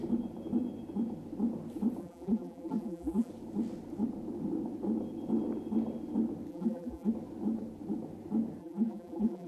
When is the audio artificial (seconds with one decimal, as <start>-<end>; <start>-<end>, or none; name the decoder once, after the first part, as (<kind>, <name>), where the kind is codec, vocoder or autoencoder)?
2.0-3.3 (vocoder, BigVGAN v2); 6.5-7.1; 8.6-9.5